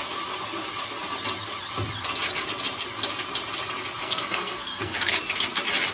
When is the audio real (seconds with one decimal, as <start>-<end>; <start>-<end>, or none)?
0.0-4.0; 5.2-5.9